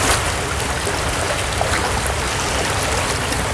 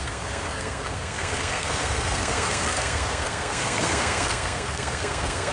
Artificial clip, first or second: second